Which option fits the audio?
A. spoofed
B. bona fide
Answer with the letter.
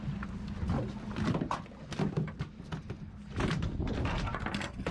B